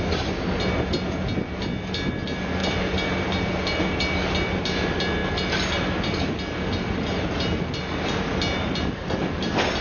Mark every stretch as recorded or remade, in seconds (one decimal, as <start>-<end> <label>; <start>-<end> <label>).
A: 0.0-9.8 recorded